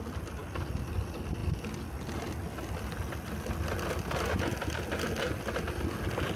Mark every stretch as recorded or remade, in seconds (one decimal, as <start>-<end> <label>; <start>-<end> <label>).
0.0-6.4 recorded